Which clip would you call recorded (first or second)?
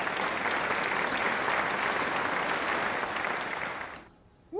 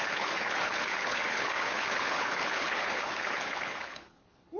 first